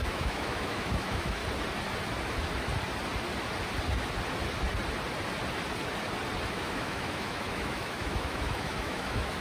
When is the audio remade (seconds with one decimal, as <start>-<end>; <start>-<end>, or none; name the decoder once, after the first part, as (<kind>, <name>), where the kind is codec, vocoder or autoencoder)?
0.0-1.4 (autoencoder, DAC-VAE); 6.5-9.4